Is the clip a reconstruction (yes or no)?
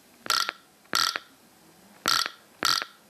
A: no